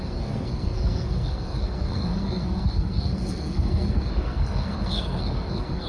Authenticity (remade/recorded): remade